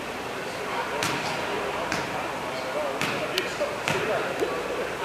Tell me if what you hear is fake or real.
real